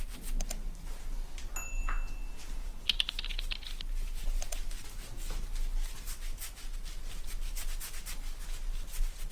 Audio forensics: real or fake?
real